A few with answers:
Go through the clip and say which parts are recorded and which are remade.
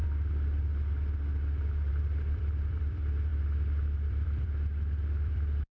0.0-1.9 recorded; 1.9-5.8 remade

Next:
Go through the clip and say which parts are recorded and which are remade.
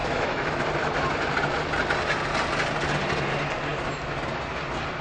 0.0-0.6 remade; 0.6-5.0 recorded